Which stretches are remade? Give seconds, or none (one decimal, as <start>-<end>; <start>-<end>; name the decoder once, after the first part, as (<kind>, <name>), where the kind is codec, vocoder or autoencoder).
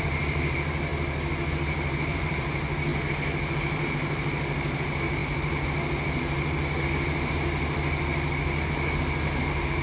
0.0-0.9 (vocoder, BigVGAN v2); 1.5-2.9; 3.5-5.2